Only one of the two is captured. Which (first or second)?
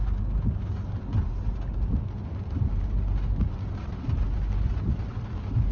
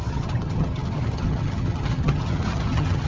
first